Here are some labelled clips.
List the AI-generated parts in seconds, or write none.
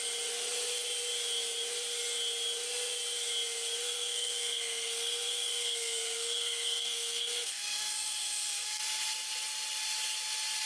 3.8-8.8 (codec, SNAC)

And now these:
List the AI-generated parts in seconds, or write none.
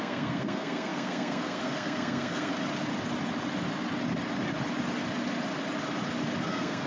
0.0-2.5 (codec, SNAC); 6.5-6.9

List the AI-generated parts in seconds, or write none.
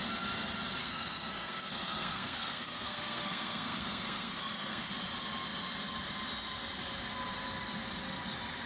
0.8-4.9 (codec, SNAC)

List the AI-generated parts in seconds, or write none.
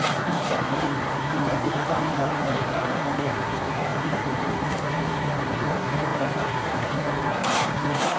0.0-8.2 (codec, SNAC)